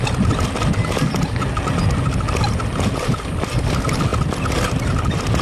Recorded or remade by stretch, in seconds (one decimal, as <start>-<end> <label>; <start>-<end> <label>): 0.0-5.4 recorded